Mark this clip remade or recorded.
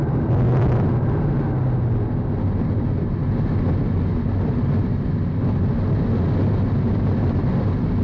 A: recorded